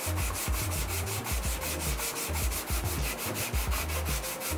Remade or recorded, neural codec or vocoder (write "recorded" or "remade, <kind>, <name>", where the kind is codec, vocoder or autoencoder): recorded